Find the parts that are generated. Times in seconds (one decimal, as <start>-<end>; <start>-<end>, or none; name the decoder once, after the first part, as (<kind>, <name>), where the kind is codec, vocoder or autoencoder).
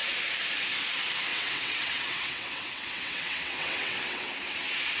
1.3-4.3 (vocoder, WaveNeXt)